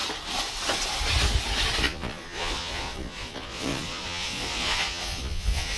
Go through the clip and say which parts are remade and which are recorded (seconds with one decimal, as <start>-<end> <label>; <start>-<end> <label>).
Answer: 0.0-1.8 recorded; 1.8-5.8 remade